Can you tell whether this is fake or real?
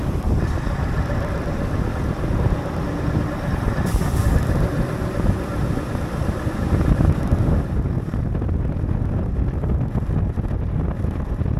real